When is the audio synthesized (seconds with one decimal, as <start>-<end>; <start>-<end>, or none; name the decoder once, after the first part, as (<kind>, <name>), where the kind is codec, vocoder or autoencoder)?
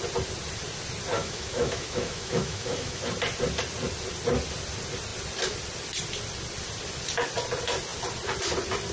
1.2-3.0 (autoencoder, DAC-VAE)